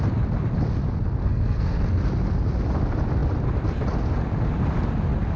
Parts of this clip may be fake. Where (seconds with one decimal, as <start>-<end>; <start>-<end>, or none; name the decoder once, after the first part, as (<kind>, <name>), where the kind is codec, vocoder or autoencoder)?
1.2-2.0 (codec, SNAC)